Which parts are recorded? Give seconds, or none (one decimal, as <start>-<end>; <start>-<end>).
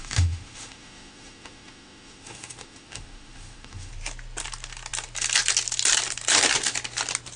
3.9-7.4